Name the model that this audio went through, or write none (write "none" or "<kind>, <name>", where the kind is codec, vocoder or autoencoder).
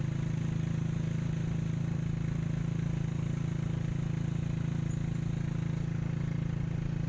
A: none